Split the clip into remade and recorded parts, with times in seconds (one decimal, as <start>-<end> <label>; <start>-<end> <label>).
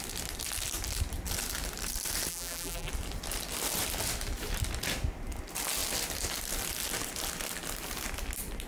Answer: 0.0-2.3 recorded; 2.3-2.9 remade; 2.9-8.7 recorded